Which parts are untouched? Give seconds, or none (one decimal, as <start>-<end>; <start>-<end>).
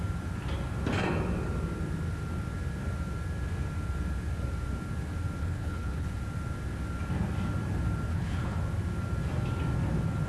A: 0.0-5.4; 6.1-8.1; 8.6-10.3